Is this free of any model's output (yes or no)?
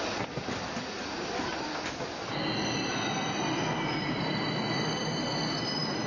yes